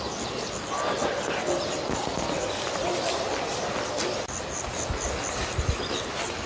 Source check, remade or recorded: recorded